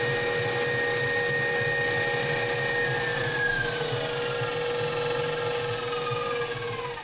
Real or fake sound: real